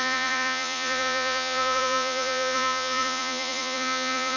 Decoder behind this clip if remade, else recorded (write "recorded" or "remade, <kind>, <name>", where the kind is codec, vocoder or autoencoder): remade, vocoder, Vocos